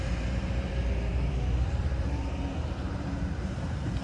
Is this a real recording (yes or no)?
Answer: no